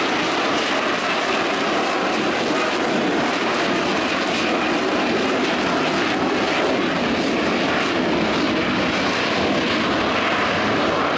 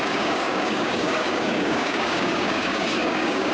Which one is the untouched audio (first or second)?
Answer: first